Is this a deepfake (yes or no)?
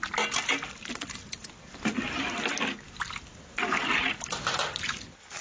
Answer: no